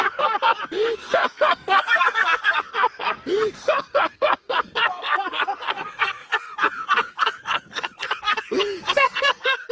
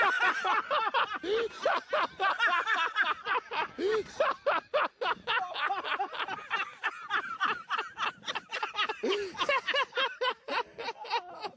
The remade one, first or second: first